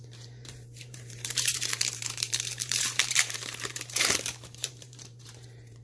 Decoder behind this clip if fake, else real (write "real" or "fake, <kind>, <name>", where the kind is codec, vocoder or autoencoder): fake, vocoder, BigVGAN v2